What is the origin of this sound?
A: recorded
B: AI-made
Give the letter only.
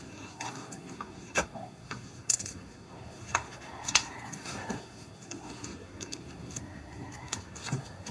B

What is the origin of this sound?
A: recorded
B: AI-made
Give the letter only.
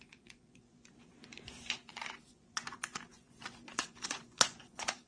B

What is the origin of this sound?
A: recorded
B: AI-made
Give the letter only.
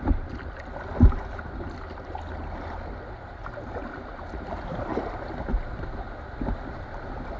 A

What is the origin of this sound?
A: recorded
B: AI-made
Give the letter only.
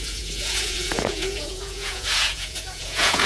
B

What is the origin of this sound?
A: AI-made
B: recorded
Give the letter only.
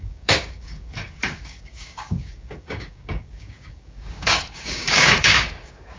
A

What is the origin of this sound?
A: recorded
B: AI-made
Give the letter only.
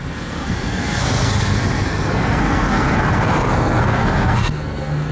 B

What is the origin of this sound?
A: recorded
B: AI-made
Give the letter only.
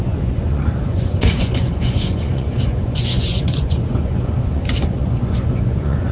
B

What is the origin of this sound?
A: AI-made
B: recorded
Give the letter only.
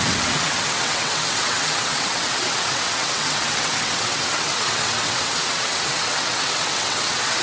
A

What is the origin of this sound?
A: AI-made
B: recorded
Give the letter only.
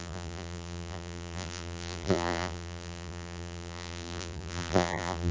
A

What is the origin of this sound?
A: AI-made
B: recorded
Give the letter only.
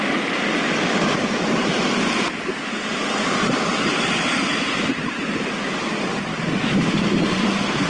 B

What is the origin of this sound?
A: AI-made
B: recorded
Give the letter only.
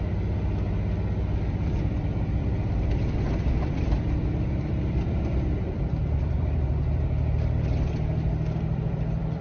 A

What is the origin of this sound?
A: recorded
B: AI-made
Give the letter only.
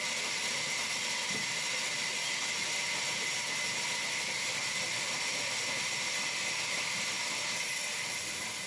A